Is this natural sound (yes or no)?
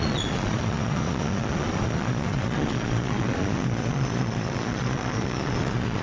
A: no